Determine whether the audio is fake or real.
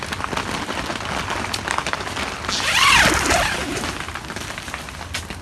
real